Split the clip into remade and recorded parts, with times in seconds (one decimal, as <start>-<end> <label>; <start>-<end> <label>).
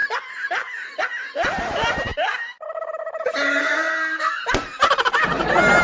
0.0-3.6 recorded; 3.6-4.4 remade; 4.4-5.8 recorded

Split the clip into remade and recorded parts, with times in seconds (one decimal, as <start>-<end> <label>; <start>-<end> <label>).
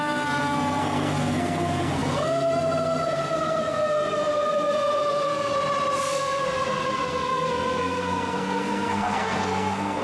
0.0-5.5 remade; 5.5-6.0 recorded; 6.0-10.0 remade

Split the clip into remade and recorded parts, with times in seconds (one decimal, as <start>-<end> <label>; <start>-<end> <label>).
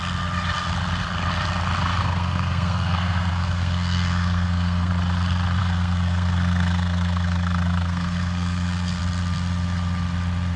0.0-1.9 recorded; 1.9-4.9 remade; 4.9-5.6 recorded; 5.6-9.0 remade; 9.0-10.6 recorded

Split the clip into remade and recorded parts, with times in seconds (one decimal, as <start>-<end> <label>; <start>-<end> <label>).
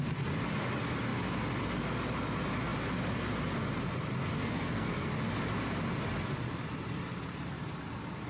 0.0-4.4 recorded; 4.4-5.1 remade; 5.1-8.3 recorded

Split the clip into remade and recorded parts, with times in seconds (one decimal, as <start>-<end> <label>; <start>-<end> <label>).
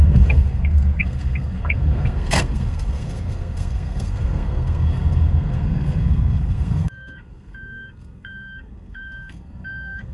0.0-10.1 remade